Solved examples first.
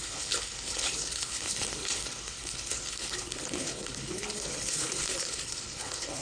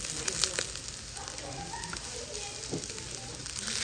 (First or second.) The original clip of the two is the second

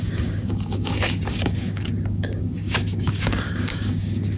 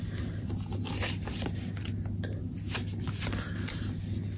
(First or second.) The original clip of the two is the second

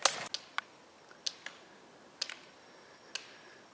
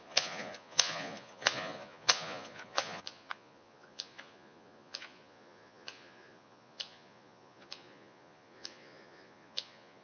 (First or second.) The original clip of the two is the first